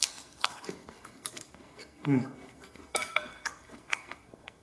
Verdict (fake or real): fake